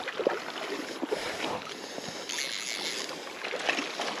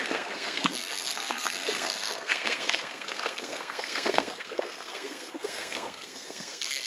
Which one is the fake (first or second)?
second